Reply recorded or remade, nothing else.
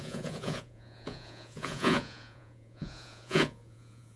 remade